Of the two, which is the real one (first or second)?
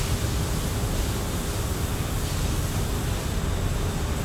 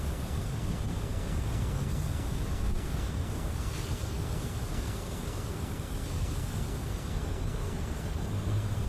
first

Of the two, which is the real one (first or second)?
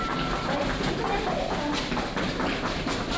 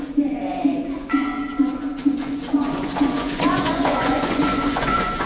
first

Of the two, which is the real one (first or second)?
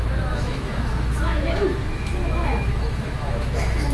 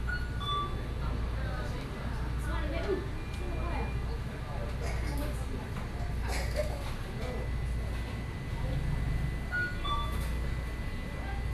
second